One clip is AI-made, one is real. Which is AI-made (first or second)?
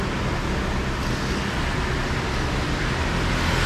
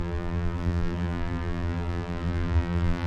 second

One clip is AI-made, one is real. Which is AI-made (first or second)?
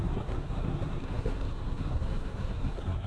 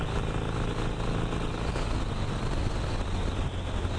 first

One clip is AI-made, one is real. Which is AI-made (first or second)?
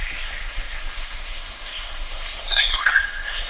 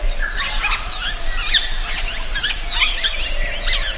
first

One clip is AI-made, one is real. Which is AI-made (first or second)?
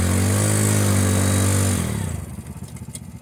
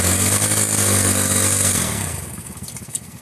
second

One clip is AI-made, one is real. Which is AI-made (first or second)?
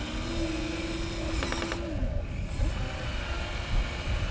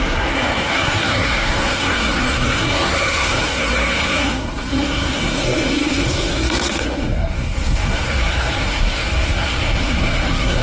second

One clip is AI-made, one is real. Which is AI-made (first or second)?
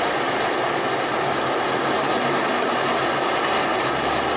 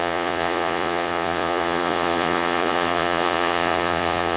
second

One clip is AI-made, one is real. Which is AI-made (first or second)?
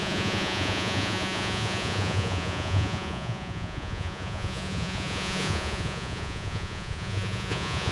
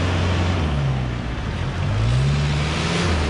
first